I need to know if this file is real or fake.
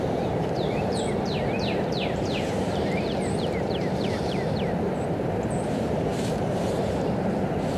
fake